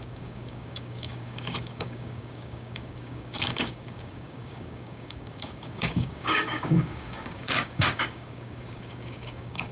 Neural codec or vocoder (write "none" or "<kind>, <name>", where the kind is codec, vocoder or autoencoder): codec, DAC